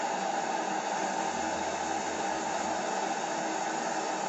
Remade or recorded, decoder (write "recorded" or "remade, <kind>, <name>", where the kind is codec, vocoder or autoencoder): recorded